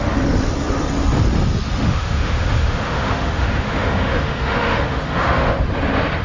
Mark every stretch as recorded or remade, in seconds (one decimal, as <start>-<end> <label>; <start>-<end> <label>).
0.0-1.8 recorded; 1.8-5.5 remade; 5.5-6.2 recorded